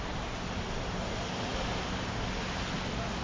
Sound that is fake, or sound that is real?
real